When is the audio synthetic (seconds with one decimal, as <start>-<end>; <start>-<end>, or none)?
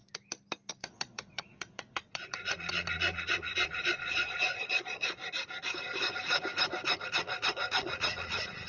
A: 0.7-5.2; 7.1-8.7